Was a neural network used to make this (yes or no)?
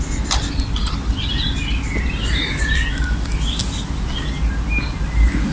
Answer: no